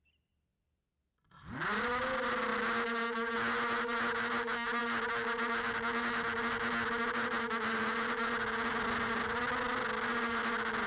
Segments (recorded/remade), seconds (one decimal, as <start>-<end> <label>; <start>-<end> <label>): 0.0-0.5 recorded; 0.5-1.6 remade; 1.6-10.9 recorded

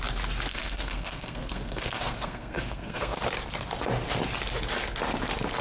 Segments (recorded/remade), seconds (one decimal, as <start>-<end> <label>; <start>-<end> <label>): 0.0-0.5 recorded; 0.5-3.2 remade; 3.2-5.6 recorded

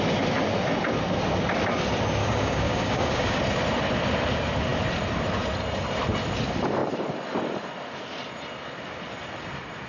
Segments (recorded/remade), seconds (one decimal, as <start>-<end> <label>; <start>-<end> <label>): 0.0-2.2 recorded; 2.2-3.4 remade; 3.4-9.9 recorded

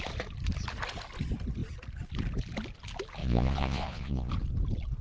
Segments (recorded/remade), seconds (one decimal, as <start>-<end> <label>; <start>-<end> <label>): 0.0-3.2 recorded; 3.2-4.3 remade; 4.3-5.0 recorded

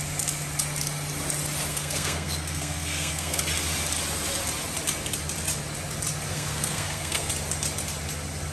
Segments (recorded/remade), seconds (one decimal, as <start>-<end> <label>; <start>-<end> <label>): 0.0-1.7 recorded; 1.7-3.4 remade; 3.4-6.3 recorded; 6.3-7.3 remade; 7.3-8.5 recorded

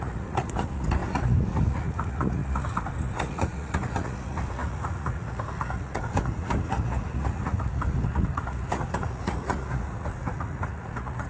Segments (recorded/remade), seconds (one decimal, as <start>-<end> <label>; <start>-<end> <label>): 0.0-11.3 remade

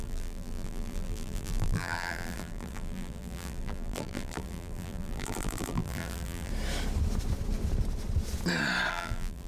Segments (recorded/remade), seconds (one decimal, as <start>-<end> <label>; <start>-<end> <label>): 0.0-6.5 remade; 6.5-8.9 recorded; 8.9-9.5 remade

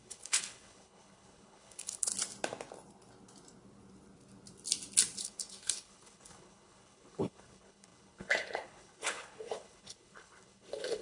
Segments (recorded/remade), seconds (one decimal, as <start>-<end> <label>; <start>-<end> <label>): 0.0-2.1 remade; 2.1-5.2 recorded; 5.2-11.0 remade